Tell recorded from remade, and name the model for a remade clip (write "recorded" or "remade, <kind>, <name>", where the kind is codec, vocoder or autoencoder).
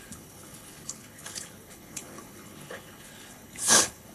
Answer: remade, codec, HILCodec